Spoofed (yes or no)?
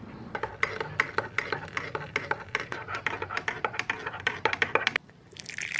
no